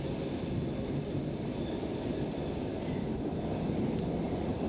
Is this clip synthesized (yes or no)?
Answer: no